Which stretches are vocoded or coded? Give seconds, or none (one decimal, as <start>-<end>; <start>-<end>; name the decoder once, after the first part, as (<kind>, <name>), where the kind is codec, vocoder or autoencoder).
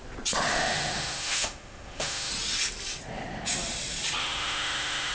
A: 0.5-2.3 (autoencoder, DAC-VAE); 4.2-5.1